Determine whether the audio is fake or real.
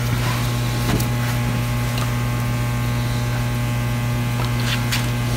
real